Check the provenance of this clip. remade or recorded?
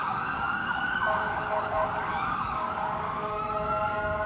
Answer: remade